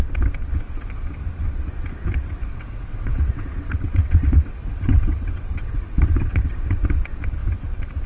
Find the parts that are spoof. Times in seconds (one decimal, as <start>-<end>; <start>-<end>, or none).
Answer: 2.5-6.6